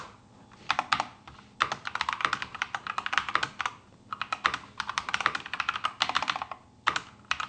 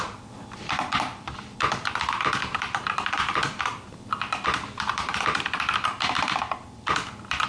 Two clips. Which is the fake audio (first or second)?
second